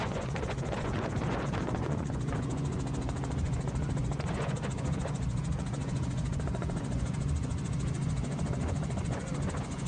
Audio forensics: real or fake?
fake